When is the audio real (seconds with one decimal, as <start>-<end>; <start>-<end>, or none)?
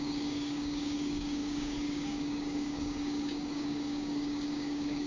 none